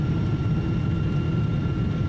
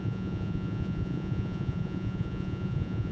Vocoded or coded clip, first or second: second